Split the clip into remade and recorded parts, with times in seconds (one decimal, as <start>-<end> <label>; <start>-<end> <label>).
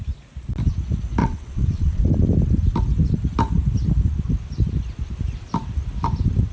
0.0-1.2 recorded; 1.2-2.0 remade; 2.0-6.5 recorded